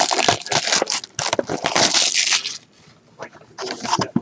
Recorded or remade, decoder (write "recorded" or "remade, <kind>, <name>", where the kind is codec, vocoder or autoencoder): recorded